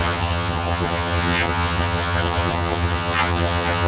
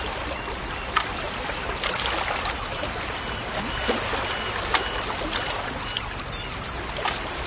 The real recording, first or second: second